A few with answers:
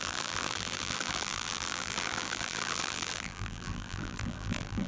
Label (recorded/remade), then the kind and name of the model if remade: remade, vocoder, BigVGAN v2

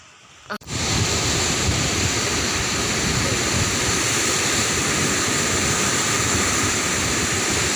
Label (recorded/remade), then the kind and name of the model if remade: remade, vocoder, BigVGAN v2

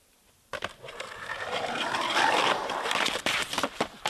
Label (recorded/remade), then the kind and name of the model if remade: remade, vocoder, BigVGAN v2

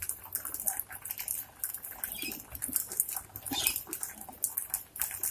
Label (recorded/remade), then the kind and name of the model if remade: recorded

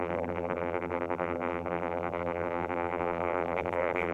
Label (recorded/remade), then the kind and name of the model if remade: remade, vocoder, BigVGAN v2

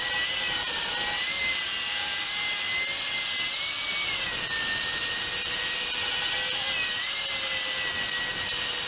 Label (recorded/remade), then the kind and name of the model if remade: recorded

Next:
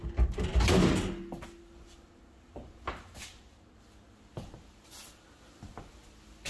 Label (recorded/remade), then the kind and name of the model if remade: recorded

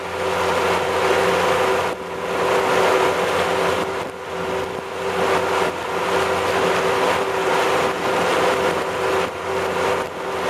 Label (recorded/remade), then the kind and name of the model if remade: recorded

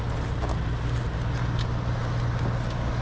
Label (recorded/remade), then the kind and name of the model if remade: recorded